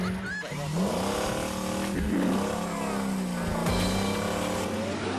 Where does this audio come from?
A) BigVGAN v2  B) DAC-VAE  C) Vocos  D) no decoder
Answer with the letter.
D